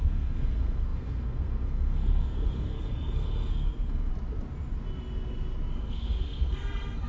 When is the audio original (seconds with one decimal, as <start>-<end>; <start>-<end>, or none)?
4.1-5.7